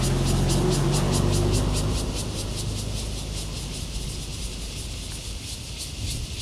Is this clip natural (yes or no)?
yes